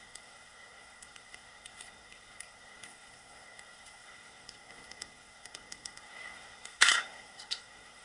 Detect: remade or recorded remade